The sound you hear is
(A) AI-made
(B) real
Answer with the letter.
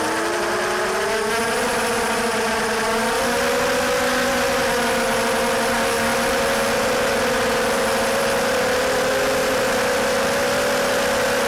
B